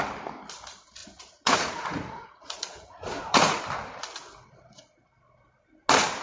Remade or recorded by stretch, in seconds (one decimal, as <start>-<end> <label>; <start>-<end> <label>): 0.0-1.0 recorded; 1.0-3.6 remade; 3.6-6.2 recorded